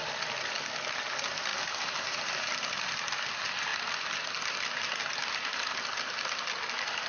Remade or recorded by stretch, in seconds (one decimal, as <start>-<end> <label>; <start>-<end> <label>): 0.0-1.5 recorded; 1.5-2.5 remade; 2.5-7.1 recorded